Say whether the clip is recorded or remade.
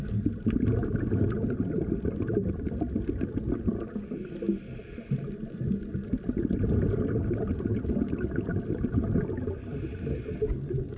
recorded